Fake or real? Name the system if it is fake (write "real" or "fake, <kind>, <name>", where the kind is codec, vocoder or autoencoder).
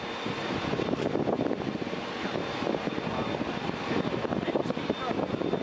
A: fake, vocoder, BigVGAN v2